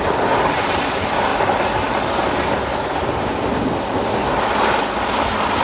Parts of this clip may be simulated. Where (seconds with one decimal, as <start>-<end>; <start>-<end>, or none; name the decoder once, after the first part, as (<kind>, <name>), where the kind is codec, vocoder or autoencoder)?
none